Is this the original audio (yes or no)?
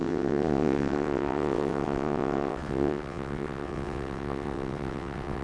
no